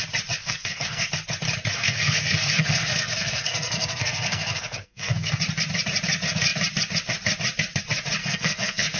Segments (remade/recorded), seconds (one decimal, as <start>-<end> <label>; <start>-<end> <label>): 0.0-0.4 recorded; 0.4-1.1 remade; 1.1-1.8 recorded; 1.8-5.4 remade; 5.4-8.2 recorded; 8.2-9.0 remade